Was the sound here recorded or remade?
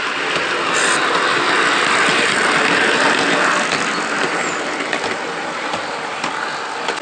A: recorded